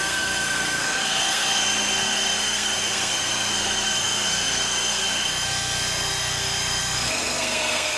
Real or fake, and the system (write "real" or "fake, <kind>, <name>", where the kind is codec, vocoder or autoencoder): fake, codec, SNAC